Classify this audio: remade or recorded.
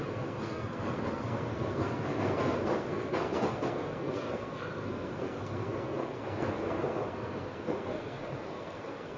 remade